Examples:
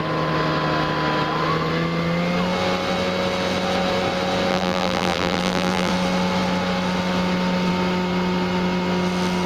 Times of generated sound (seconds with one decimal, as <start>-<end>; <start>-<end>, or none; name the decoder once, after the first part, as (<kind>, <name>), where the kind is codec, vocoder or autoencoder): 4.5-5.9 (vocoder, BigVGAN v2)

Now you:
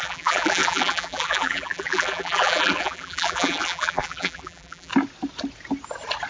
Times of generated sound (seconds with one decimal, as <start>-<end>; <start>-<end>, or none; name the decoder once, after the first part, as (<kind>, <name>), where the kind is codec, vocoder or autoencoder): 0.0-4.9 (vocoder, BigVGAN v2)

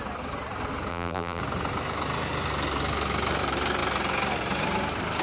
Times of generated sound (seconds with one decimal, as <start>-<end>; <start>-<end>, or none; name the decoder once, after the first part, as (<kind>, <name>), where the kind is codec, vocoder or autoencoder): 0.9-1.4 (vocoder, BigVGAN v2)

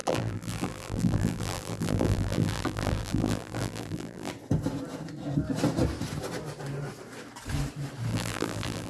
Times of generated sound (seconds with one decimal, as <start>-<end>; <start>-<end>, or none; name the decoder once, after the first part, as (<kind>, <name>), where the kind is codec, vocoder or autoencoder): 0.0-4.3 (vocoder, BigVGAN v2); 8.1-8.9

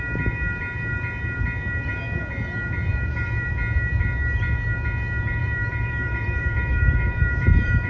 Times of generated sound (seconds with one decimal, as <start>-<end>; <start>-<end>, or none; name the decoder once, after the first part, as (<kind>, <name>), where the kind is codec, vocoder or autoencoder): 2.9-3.5 (vocoder, BigVGAN v2); 5.4-7.9

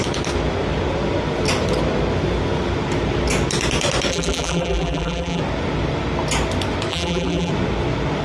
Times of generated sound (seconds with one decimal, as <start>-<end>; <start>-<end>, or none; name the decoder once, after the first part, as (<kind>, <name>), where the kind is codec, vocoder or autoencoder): 4.1-5.4 (vocoder, BigVGAN v2); 6.9-7.5

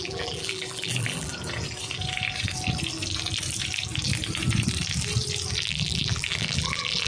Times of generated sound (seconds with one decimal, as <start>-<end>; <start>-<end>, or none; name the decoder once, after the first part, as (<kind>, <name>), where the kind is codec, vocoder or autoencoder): 0.0-1.3 (vocoder, BigVGAN v2); 5.6-7.1

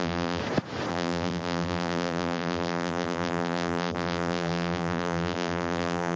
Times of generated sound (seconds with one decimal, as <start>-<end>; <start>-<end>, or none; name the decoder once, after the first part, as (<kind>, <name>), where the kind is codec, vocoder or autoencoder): 0.0-0.4 (vocoder, BigVGAN v2); 0.9-6.2